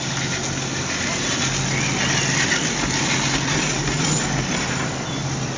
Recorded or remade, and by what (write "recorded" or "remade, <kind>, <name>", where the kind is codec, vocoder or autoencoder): recorded